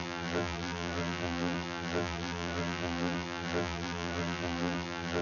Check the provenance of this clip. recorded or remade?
remade